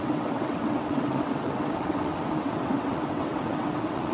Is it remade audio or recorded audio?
remade